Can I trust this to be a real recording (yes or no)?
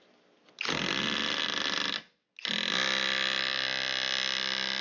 yes